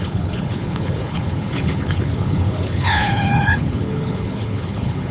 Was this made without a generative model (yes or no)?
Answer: no